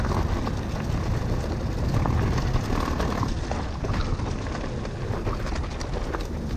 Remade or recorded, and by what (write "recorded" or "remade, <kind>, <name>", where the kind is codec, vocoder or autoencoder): recorded